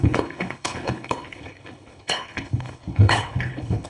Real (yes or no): no